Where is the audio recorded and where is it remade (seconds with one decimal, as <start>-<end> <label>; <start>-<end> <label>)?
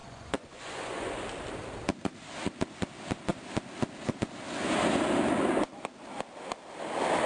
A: 0.0-1.1 remade; 1.1-7.3 recorded